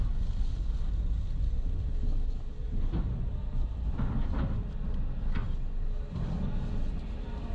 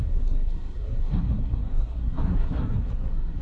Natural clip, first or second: first